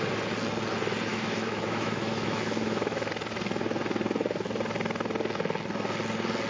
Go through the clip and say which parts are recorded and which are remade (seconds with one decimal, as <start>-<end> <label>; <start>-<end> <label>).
0.0-1.1 recorded; 1.1-3.1 remade; 3.1-6.5 recorded